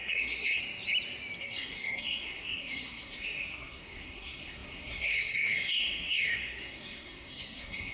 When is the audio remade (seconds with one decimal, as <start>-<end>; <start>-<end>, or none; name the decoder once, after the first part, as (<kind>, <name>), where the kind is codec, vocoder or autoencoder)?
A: 0.0-0.6 (codec, SNAC); 1.4-7.9